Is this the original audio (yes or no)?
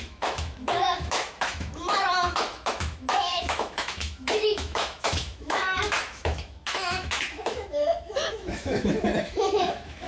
no